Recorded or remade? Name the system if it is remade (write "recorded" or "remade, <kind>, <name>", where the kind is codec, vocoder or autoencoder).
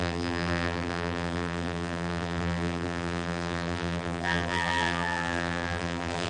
remade, vocoder, BigVGAN v2